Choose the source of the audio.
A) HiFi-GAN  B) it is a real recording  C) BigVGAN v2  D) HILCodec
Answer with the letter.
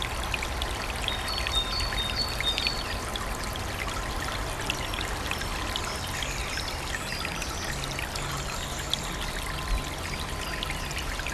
B